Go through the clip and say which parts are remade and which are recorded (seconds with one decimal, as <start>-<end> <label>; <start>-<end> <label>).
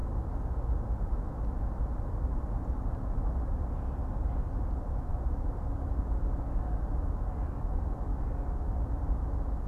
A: 0.0-9.7 recorded